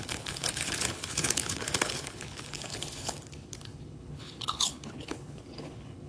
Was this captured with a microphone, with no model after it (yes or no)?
no